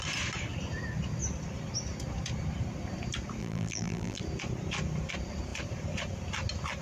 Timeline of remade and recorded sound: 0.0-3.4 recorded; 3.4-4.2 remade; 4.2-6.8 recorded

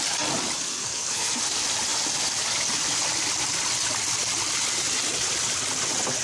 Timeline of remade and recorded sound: 0.0-0.7 recorded; 0.7-1.4 remade; 1.4-6.2 recorded

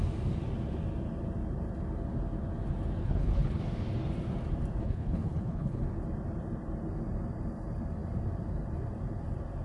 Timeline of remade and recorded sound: 0.0-3.0 recorded; 3.0-3.6 remade; 3.6-4.8 recorded; 4.8-5.8 remade; 5.8-9.6 recorded

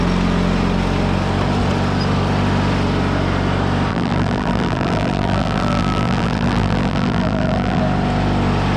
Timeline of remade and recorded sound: 0.0-3.9 recorded; 3.9-7.8 remade; 7.8-8.8 recorded

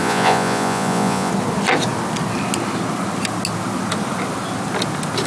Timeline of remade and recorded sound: 0.0-1.3 remade; 1.3-5.3 recorded

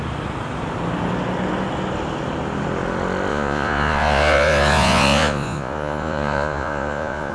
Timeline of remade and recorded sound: 0.0-3.3 recorded; 3.3-7.3 remade